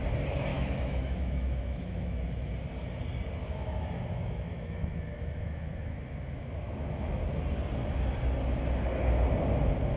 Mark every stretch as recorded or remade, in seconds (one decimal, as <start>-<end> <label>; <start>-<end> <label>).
0.0-0.5 recorded; 0.5-2.5 remade; 2.5-3.4 recorded; 3.4-7.2 remade; 7.2-10.0 recorded